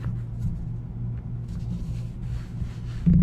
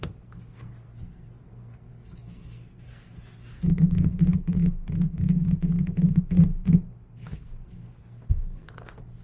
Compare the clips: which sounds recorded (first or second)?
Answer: first